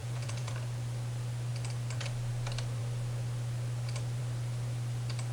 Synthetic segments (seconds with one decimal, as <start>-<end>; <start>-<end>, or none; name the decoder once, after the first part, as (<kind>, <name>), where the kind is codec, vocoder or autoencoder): 0.0-0.5 (vocoder, Vocos)

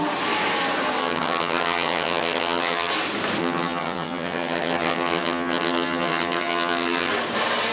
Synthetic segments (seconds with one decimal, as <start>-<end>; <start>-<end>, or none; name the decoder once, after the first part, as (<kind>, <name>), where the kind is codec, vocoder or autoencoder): 1.0-2.9 (vocoder, HiFi-GAN); 3.4-7.1